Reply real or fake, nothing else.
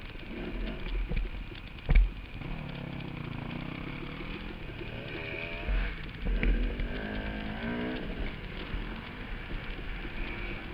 real